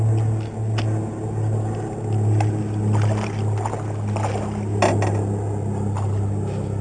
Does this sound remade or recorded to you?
recorded